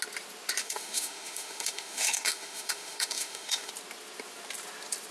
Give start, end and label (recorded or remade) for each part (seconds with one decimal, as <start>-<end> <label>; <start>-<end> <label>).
0.0-0.6 recorded; 0.6-3.7 remade; 3.7-5.1 recorded